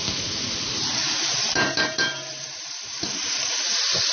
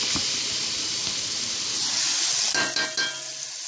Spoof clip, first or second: first